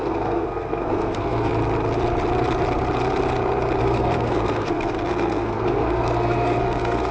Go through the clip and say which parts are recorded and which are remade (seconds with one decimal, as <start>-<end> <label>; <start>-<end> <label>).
0.0-1.5 remade; 1.5-3.8 recorded; 3.8-7.1 remade